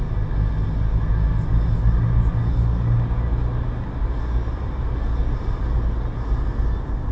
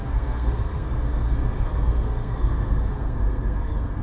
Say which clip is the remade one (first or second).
second